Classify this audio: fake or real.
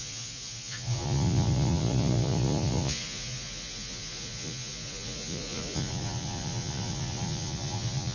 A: fake